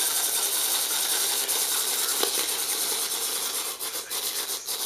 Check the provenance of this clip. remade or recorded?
recorded